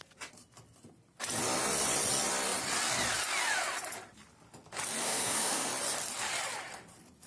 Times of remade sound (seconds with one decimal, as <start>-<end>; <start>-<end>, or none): 5.0-5.7